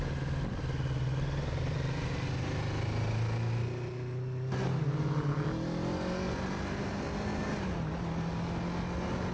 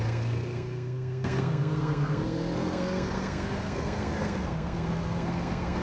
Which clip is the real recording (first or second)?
first